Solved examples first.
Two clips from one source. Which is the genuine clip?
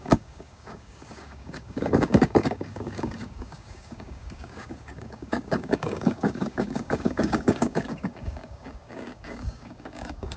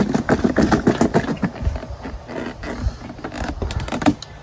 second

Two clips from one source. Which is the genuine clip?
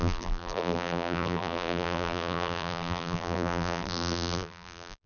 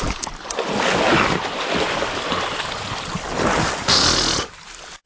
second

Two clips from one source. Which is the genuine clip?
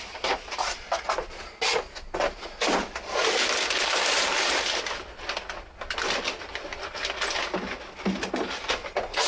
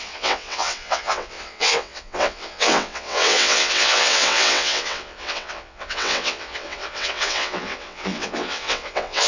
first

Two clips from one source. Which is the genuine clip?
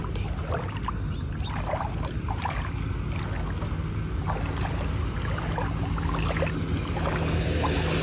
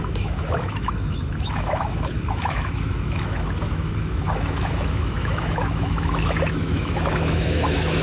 first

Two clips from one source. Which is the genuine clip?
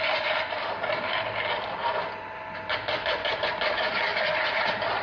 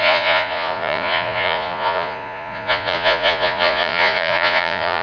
first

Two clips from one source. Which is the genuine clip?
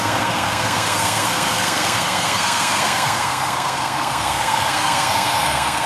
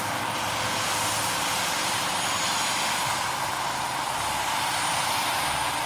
second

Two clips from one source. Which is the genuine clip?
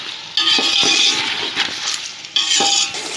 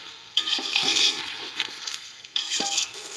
first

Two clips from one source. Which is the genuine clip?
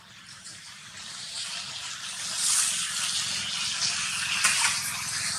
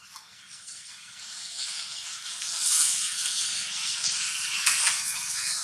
first